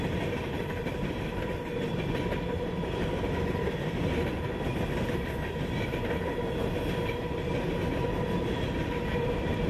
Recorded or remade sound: recorded